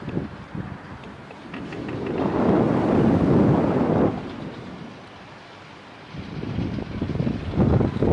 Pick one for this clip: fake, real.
real